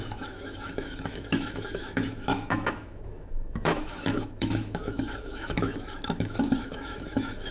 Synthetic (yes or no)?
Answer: yes